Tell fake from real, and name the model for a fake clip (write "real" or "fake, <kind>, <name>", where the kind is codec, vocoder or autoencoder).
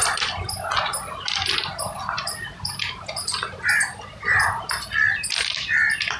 real